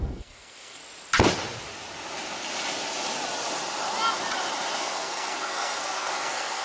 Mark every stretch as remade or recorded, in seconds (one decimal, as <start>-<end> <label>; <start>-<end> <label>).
0.0-0.8 remade; 0.8-4.8 recorded; 4.8-6.6 remade